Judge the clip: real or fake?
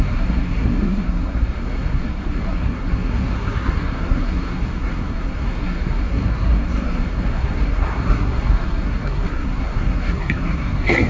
fake